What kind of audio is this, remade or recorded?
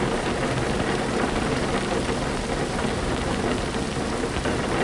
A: recorded